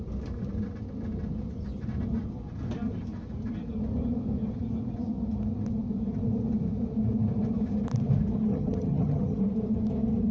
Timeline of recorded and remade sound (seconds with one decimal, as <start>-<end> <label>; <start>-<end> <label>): 0.0-8.5 recorded; 8.5-9.4 remade; 9.4-10.3 recorded